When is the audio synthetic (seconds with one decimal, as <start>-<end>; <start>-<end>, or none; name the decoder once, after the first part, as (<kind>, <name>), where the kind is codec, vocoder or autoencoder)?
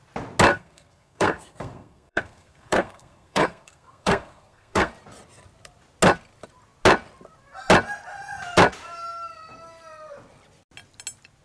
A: 0.5-4.9 (codec, SNAC)